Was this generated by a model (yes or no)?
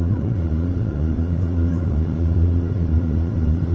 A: yes